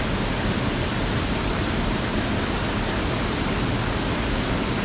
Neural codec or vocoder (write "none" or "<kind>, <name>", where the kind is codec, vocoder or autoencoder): none